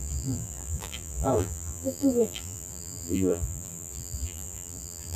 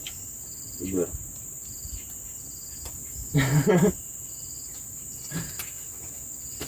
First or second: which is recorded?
second